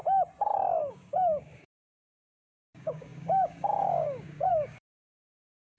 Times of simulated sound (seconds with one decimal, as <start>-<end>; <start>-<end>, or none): 0.9-5.8